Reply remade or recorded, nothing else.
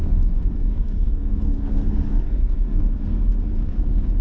remade